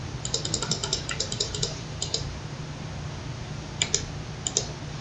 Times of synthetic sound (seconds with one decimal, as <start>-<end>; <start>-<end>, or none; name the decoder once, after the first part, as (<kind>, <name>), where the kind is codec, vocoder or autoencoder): 0.8-3.8 (vocoder, BigVGAN v2)